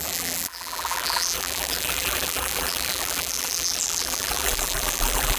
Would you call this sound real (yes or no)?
no